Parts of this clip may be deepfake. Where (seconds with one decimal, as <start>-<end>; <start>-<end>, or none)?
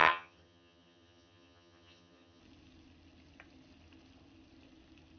0.0-2.4